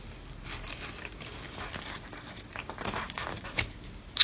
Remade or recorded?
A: recorded